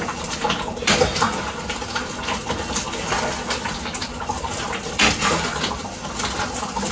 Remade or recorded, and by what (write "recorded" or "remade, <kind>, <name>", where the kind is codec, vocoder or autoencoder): recorded